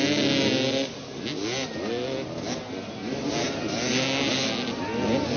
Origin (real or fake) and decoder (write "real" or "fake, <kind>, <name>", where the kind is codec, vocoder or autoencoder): real